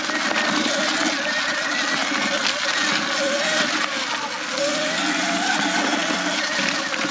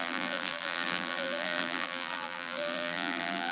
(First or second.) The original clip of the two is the first